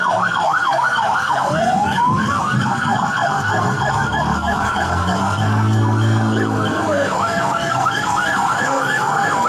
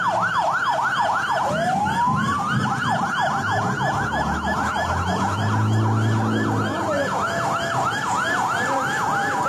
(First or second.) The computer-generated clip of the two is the first